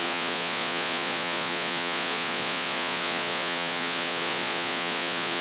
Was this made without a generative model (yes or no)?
no